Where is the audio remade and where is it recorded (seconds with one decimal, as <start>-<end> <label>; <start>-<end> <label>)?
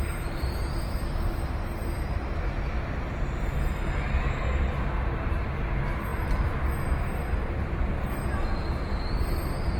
0.0-9.8 recorded